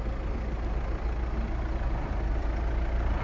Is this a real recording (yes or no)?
yes